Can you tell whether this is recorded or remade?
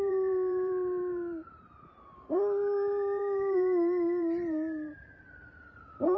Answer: remade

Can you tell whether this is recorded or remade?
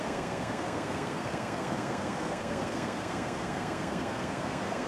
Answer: remade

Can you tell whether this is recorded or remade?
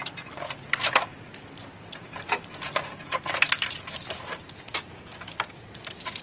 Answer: recorded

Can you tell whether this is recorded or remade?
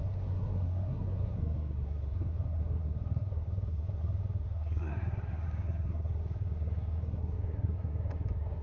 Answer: remade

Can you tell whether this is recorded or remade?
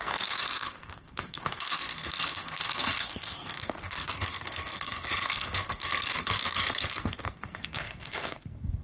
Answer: remade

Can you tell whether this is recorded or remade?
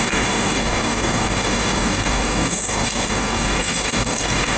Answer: remade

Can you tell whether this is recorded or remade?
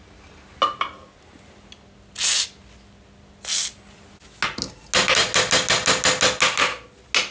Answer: recorded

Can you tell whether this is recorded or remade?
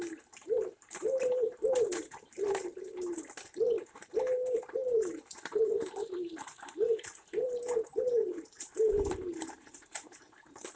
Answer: remade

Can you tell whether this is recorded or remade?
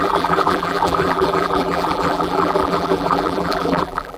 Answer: remade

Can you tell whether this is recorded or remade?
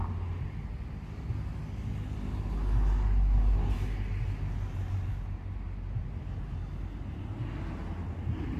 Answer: recorded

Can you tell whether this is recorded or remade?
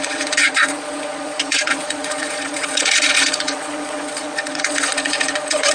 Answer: remade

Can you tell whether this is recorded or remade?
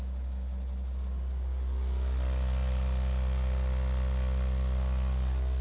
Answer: recorded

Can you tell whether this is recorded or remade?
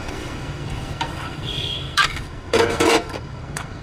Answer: remade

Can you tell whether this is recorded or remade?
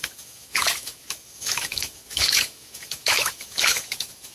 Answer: remade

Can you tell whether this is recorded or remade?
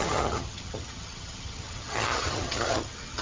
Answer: remade